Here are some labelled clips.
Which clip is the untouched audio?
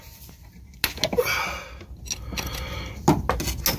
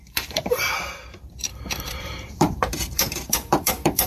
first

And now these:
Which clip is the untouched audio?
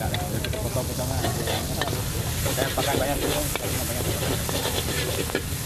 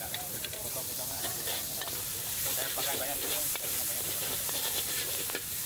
first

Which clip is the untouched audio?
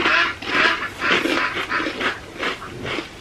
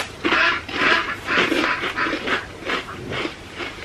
first